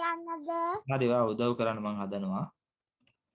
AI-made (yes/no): no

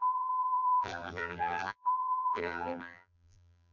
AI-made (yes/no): yes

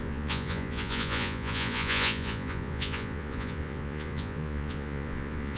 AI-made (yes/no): yes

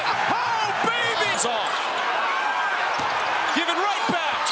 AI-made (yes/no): no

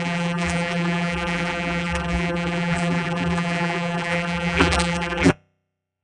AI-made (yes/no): yes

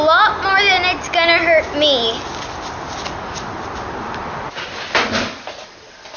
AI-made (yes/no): no